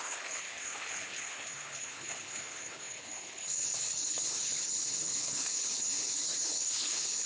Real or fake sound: fake